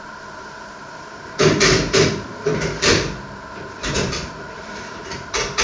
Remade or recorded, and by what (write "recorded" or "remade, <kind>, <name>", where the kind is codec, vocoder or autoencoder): remade, vocoder, BigVGAN v2